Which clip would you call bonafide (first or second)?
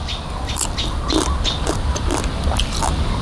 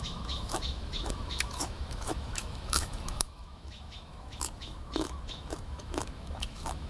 first